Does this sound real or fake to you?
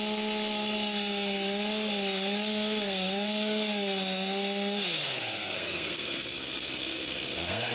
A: fake